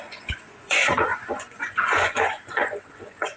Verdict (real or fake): fake